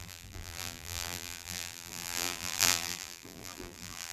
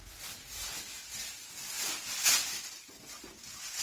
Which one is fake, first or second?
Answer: first